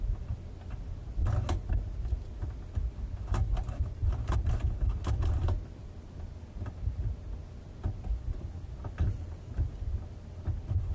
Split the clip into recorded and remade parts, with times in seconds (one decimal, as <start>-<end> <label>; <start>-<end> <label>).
0.0-10.9 recorded

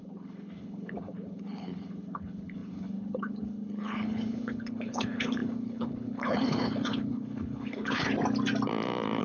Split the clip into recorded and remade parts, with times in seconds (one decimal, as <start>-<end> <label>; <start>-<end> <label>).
0.0-8.1 remade; 8.1-9.2 recorded

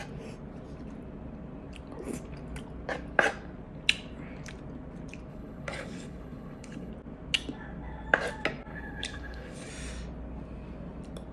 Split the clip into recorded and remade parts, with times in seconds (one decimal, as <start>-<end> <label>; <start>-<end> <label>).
0.0-5.3 recorded; 5.3-6.9 remade; 6.9-8.7 recorded; 8.7-9.7 remade; 9.7-11.3 recorded

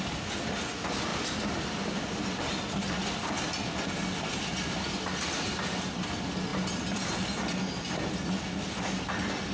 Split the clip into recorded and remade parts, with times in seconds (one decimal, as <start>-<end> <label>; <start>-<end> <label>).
0.0-9.5 recorded

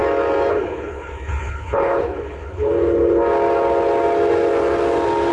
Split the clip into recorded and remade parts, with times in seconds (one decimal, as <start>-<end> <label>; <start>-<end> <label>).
0.0-0.5 recorded; 0.5-3.2 remade; 3.2-5.3 recorded

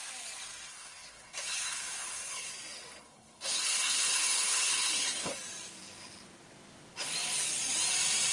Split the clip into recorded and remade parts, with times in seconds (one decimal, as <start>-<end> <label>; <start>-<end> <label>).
0.0-0.7 recorded; 0.7-2.5 remade; 2.5-3.0 recorded; 3.0-5.3 remade; 5.3-8.3 recorded

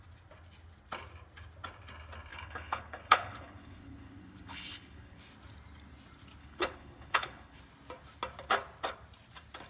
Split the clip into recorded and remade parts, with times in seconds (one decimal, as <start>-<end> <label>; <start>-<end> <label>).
0.0-2.3 recorded; 2.3-5.2 remade; 5.2-6.4 recorded; 6.4-7.6 remade; 7.6-9.7 recorded